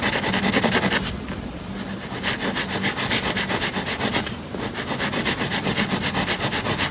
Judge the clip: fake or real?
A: real